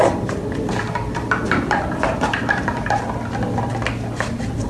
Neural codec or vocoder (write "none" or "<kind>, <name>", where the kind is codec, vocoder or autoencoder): none